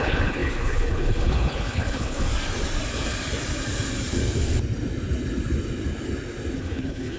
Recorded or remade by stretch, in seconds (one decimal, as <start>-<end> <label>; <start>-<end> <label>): 0.0-2.3 remade; 2.3-6.6 recorded; 6.6-7.2 remade